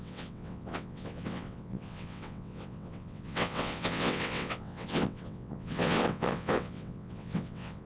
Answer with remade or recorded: remade